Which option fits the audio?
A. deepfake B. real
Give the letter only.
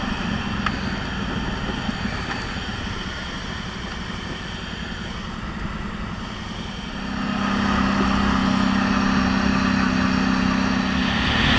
B